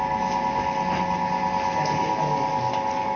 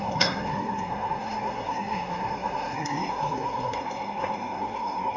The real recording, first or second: first